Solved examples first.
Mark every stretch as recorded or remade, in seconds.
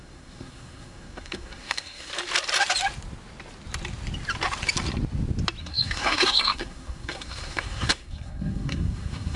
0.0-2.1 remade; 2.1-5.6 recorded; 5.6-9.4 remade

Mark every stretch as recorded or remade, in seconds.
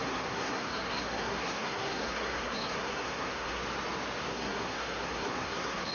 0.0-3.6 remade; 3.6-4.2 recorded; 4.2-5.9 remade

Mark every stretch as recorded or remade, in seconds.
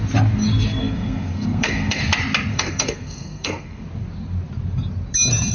0.0-0.8 recorded; 0.8-2.0 remade; 2.0-2.5 recorded; 2.5-3.8 remade; 3.8-5.5 recorded